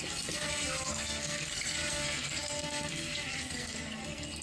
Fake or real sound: fake